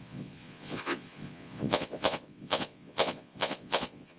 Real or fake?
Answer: fake